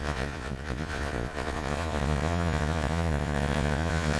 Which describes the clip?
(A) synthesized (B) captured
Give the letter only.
A